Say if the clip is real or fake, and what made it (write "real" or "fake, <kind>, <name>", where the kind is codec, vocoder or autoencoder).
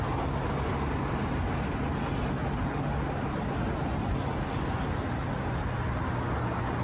real